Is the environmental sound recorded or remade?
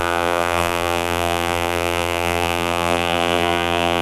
remade